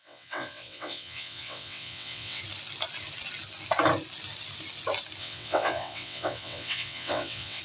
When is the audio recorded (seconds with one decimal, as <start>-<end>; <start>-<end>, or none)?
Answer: 2.4-5.2